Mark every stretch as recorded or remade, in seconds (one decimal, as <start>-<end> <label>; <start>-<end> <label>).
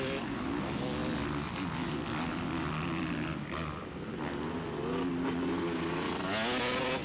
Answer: 0.0-7.0 recorded